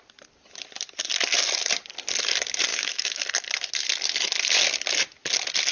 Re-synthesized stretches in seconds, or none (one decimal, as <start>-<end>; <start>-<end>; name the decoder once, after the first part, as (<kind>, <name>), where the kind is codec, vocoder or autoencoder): 2.7-3.2 (autoencoder, DAC-VAE)